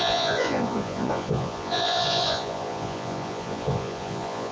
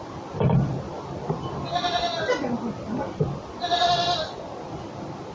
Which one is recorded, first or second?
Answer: second